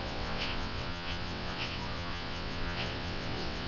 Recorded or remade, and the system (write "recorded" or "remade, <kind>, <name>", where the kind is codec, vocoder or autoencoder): remade, vocoder, WaveNeXt